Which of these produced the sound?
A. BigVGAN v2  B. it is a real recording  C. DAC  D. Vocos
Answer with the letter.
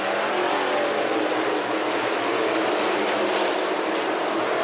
B